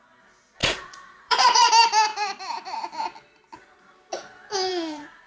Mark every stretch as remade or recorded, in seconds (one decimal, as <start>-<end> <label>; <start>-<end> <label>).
0.0-0.6 recorded; 0.6-1.7 remade; 1.7-4.7 recorded; 4.7-5.3 remade